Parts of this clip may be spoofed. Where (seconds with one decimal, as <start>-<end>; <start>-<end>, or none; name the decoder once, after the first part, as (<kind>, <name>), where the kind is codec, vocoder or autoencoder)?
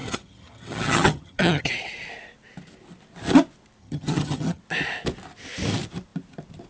0.0-1.7 (vocoder, HiFi-GAN); 3.8-4.6